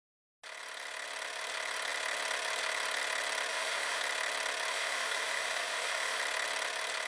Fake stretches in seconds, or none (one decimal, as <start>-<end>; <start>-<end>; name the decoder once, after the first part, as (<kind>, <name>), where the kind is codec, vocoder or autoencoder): 3.5-4.0 (autoencoder, DAC-VAE); 4.7-6.2